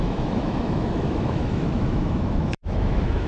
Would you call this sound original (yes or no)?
no